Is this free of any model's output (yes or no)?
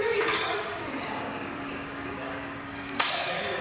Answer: no